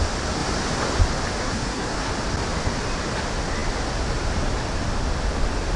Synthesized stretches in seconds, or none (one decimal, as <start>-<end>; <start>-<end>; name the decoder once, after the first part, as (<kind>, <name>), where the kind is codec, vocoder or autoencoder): 1.4-2.1 (codec, SNAC)